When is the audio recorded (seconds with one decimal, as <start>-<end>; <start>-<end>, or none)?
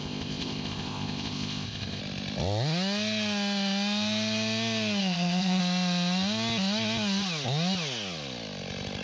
2.0-5.0; 5.6-9.0